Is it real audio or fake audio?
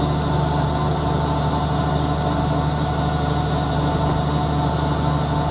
real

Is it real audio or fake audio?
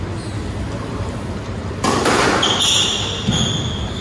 real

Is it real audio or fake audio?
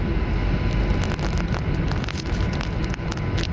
real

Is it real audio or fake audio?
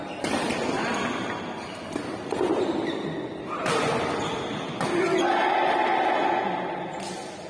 real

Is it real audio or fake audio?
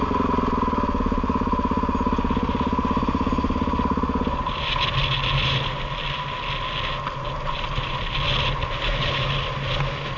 real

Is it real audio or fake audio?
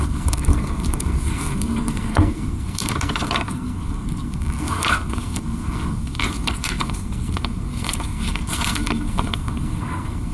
fake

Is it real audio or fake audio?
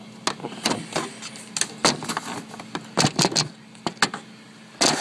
real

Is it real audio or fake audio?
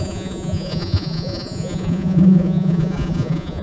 fake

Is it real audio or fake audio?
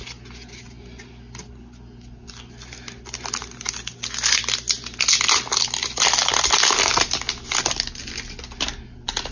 real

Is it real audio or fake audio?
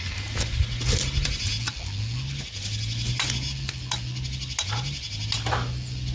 real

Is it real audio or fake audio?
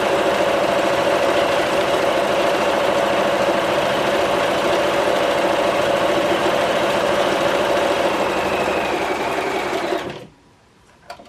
fake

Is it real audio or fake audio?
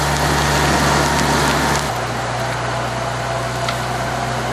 real